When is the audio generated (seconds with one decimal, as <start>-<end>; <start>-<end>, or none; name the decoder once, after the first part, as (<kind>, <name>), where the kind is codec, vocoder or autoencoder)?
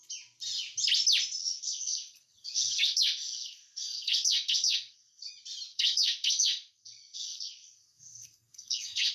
1.4-5.3 (codec, SNAC); 5.7-9.1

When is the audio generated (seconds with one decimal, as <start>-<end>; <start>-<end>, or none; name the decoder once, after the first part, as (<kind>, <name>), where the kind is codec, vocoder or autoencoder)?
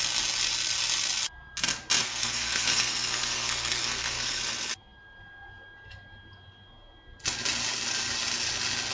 2.0-4.4 (codec, SNAC)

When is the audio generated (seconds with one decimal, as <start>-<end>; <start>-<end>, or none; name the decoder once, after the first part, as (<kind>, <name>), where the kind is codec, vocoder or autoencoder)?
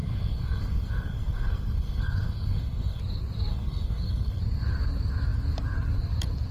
0.0-3.0 (codec, SNAC); 3.5-4.4